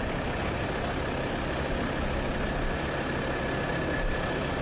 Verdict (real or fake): real